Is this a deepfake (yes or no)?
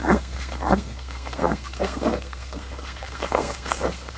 yes